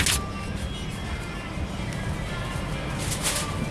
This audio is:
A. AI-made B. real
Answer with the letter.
B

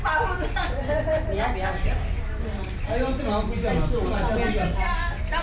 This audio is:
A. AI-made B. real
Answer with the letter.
B